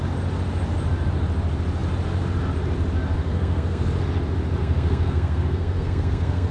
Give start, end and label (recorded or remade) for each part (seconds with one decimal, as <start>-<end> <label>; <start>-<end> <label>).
0.0-3.2 recorded; 3.2-3.9 remade; 3.9-4.6 recorded; 4.6-6.5 remade